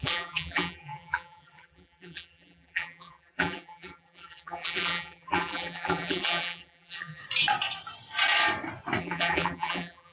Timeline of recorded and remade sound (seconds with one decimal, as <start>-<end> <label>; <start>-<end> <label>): 0.0-7.2 remade; 7.2-9.0 recorded; 9.0-10.1 remade